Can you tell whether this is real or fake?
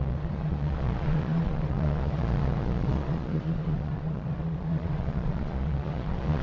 fake